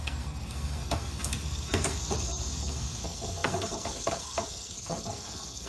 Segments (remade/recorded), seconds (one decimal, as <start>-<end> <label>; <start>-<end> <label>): 0.0-5.7 remade